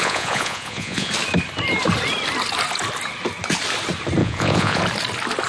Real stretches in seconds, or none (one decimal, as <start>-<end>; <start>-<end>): 1.1-4.2; 4.8-5.5

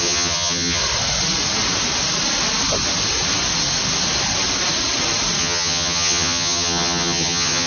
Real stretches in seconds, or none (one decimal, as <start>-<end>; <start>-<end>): 0.8-5.4

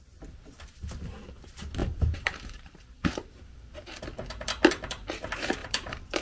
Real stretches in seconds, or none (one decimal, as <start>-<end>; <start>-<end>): 0.0-1.8; 4.0-5.6

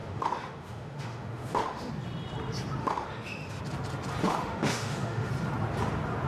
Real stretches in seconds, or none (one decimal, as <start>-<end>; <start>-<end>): 1.9-2.8; 3.6-4.2; 5.3-6.3